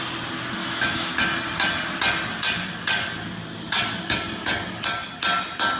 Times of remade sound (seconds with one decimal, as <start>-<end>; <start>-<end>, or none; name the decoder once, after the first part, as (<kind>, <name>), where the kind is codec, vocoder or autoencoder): 0.6-1.1 (autoencoder, DAC-VAE)